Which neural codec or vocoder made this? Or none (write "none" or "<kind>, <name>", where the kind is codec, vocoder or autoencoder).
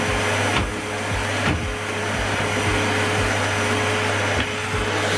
none